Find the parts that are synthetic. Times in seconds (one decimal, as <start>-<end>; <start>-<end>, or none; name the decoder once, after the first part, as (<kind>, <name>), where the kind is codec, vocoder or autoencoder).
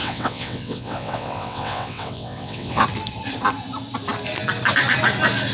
0.0-2.8 (vocoder, WaveNeXt)